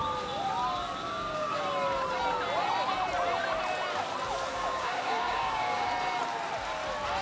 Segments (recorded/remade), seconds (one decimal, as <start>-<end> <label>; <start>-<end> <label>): 0.0-1.0 recorded; 1.0-1.6 remade; 1.6-4.5 recorded; 4.5-5.9 remade; 5.9-7.2 recorded